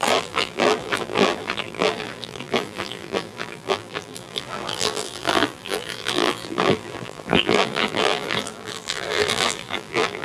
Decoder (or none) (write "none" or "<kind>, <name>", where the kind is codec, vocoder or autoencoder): vocoder, BigVGAN v2